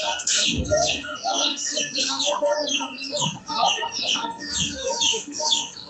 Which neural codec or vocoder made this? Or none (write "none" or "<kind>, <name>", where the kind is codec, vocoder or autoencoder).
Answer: codec, SNAC